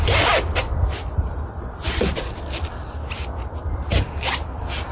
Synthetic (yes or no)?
yes